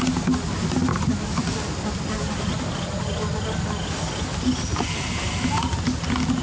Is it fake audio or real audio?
real